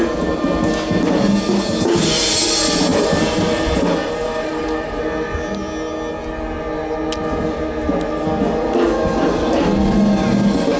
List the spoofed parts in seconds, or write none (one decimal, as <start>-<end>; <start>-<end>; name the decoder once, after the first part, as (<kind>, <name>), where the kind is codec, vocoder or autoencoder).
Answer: 2.9-5.0 (vocoder, BigVGAN v2)